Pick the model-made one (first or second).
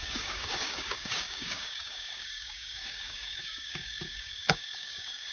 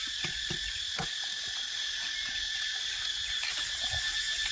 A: first